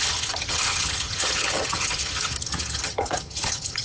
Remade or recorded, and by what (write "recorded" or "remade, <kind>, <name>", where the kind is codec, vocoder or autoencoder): remade, vocoder, HiFi-GAN